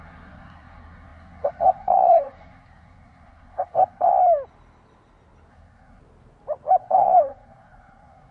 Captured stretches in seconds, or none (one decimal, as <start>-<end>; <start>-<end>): 4.1-5.5; 6.0-6.8

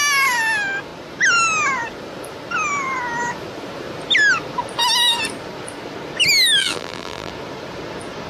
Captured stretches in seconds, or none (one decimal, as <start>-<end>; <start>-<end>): 0.0-6.6; 7.3-8.3